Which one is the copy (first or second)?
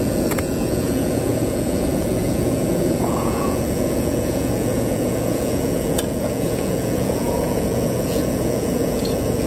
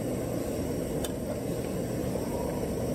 first